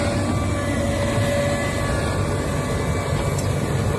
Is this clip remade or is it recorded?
recorded